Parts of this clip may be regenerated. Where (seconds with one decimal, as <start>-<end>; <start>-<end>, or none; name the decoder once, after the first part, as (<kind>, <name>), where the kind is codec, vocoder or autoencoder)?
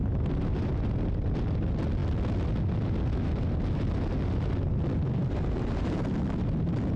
none